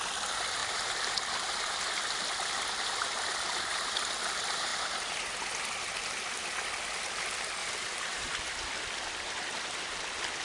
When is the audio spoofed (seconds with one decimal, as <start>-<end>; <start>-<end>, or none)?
0.6-1.5; 4.7-5.4; 7.6-8.4